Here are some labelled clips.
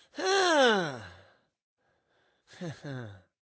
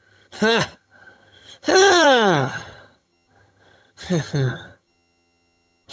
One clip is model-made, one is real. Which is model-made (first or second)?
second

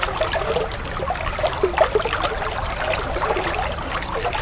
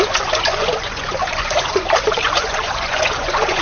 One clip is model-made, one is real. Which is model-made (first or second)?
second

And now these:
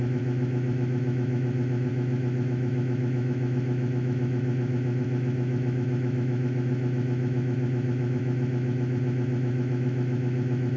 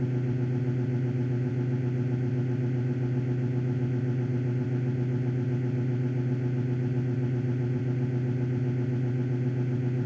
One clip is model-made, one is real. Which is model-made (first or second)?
first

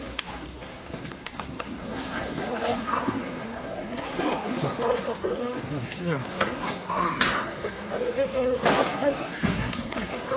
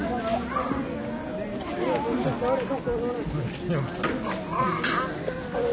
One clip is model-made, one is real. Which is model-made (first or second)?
first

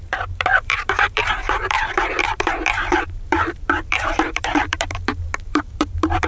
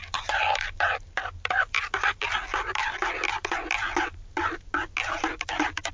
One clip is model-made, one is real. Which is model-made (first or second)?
first